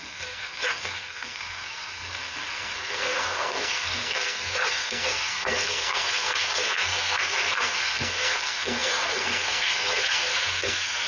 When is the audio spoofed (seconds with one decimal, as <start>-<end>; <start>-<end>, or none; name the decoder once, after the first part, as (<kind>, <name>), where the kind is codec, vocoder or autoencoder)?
0.0-11.1 (codec, SNAC)